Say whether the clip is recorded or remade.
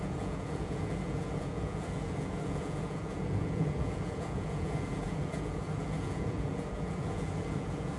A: remade